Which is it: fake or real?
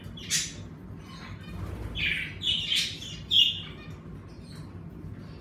real